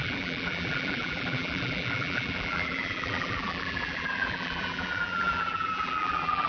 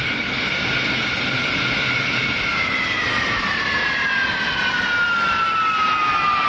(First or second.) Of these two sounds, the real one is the second